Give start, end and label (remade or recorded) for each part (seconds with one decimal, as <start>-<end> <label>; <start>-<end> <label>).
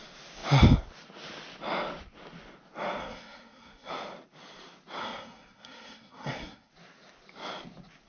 0.0-3.0 recorded; 3.0-3.9 remade; 3.9-5.0 recorded; 5.0-6.7 remade; 6.7-8.1 recorded